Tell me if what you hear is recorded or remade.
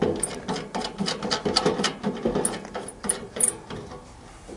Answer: recorded